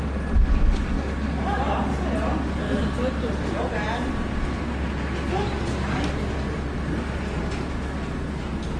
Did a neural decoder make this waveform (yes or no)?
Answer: no